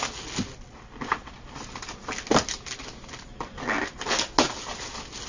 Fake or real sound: real